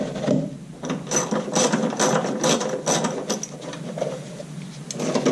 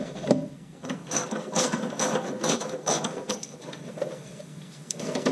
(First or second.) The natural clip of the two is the first